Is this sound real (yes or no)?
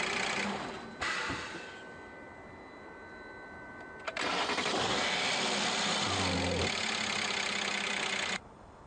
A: yes